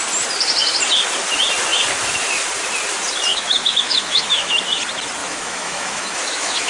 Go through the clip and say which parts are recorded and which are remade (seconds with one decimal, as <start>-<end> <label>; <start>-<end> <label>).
0.0-3.3 recorded; 3.3-4.6 remade; 4.6-5.2 recorded; 5.2-6.7 remade